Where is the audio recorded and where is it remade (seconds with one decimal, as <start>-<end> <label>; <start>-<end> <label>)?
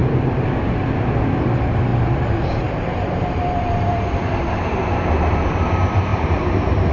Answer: 0.0-0.9 remade; 0.9-1.9 recorded; 1.9-5.5 remade; 5.5-6.1 recorded; 6.1-6.9 remade